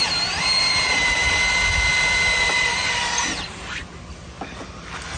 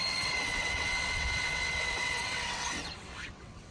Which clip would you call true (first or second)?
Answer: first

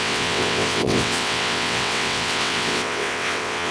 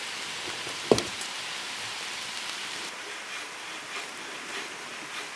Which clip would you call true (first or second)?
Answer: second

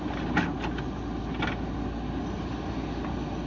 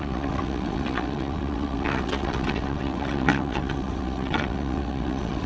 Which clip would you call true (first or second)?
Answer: first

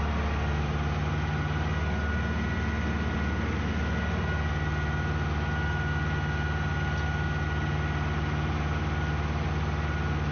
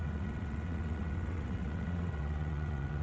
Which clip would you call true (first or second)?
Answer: first